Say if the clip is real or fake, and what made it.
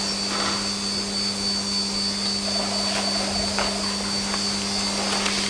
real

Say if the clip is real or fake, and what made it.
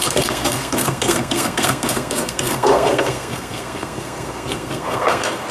fake, codec, SNAC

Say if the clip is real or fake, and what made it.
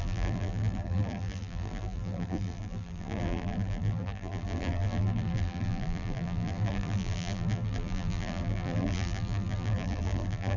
fake, vocoder, BigVGAN v2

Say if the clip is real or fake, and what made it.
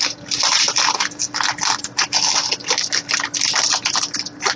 real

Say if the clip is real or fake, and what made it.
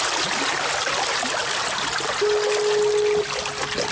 real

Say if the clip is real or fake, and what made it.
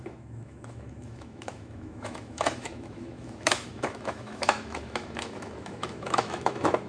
fake, autoencoder, DAC-VAE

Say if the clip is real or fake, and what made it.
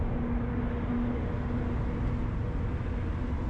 real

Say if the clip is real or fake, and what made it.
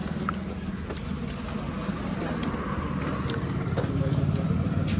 real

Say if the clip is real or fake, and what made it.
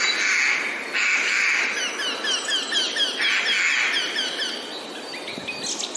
real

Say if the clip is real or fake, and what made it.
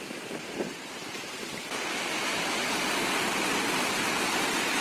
real